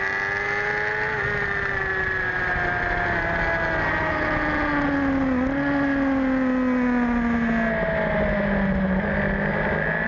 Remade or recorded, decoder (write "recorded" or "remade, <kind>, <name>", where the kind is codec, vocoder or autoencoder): recorded